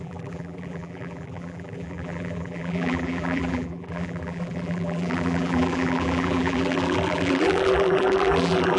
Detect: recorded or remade remade